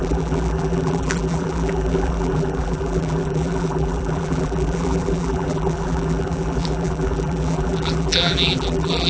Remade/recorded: remade